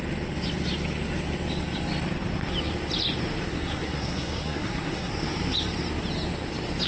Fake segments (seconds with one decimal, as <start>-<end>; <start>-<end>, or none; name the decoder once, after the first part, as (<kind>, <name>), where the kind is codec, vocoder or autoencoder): 3.5-5.1 (codec, SNAC)